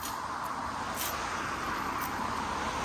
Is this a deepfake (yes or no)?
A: no